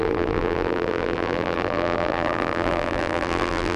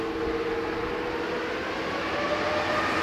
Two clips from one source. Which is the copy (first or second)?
first